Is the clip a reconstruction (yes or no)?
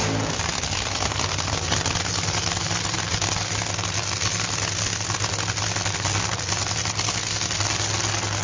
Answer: no